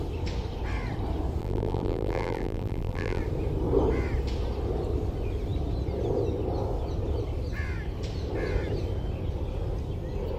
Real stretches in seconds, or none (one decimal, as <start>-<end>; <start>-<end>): 0.0-1.4; 3.2-10.4